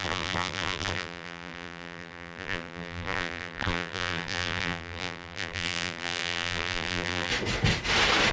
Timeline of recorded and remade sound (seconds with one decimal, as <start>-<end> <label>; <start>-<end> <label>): 0.0-7.3 remade; 7.3-8.3 recorded